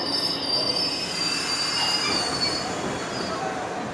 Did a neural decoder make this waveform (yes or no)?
no